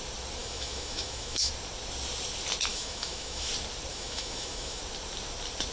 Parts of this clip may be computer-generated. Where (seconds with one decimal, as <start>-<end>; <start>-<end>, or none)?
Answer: 0.4-1.5; 2.7-3.5; 3.9-4.8